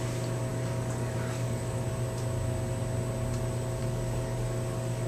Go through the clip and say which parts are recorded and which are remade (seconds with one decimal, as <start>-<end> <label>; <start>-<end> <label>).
0.0-0.5 recorded; 0.5-1.9 remade; 1.9-3.8 recorded; 3.8-5.1 remade